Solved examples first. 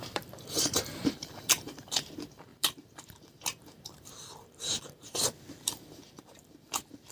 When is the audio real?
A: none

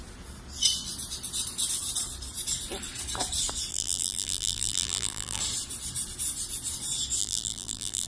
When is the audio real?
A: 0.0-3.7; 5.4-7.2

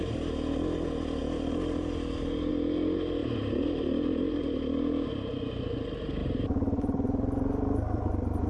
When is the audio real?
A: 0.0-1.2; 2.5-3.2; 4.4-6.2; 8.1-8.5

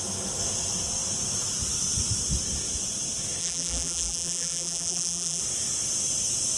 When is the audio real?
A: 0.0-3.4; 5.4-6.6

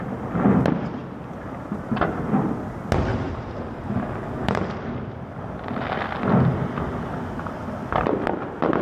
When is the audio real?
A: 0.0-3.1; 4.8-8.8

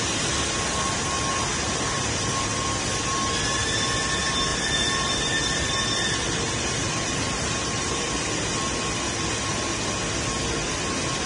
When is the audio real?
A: 0.0-4.5; 8.1-11.3